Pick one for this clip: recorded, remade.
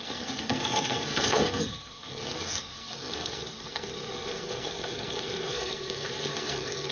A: remade